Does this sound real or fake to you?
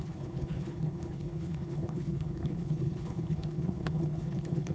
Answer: fake